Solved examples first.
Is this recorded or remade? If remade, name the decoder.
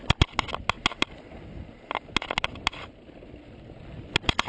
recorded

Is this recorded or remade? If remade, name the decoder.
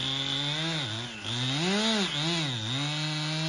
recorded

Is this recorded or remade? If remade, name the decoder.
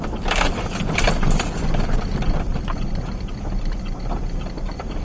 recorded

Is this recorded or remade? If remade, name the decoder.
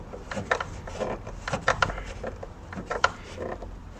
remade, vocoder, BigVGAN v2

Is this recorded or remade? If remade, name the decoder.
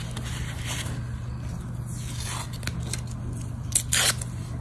recorded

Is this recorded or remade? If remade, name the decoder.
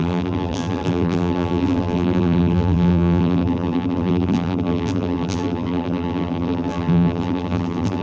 remade, vocoder, BigVGAN v2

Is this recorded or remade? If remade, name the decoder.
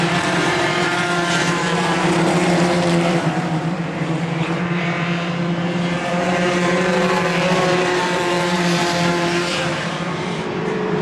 remade, vocoder, BigVGAN v2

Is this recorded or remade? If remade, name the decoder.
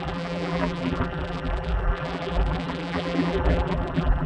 remade, vocoder, BigVGAN v2